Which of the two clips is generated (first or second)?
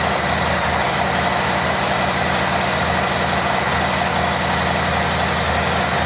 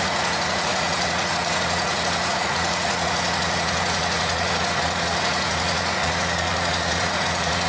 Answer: second